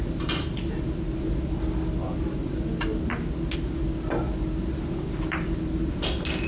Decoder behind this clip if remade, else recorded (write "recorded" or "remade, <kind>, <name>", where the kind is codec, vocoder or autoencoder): recorded